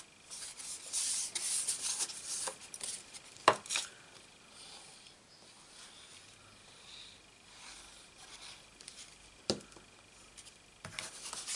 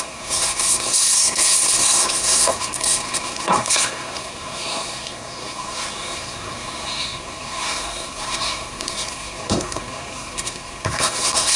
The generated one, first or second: second